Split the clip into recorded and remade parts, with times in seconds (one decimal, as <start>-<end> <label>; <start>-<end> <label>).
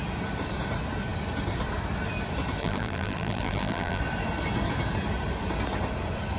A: 0.0-2.6 recorded; 2.6-4.0 remade; 4.0-6.4 recorded